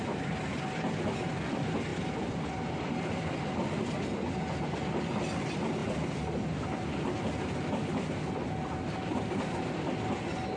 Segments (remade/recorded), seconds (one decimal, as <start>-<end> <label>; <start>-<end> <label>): 0.0-1.9 recorded; 1.9-2.9 remade; 2.9-5.8 recorded; 5.8-7.2 remade; 7.2-10.6 recorded